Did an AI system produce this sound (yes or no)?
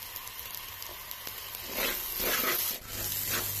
no